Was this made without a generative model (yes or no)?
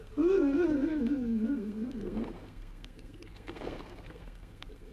no